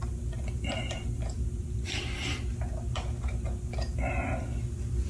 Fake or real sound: real